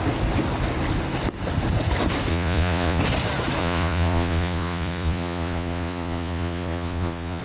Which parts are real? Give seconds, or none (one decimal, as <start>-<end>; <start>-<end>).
0.0-2.3; 3.0-3.6